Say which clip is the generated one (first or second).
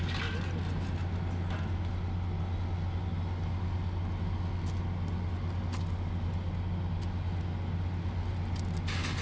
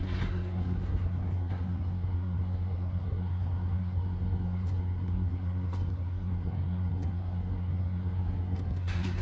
second